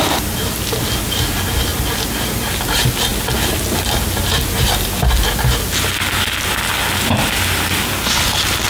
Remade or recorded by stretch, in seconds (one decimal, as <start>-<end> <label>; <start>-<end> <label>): 0.0-8.7 recorded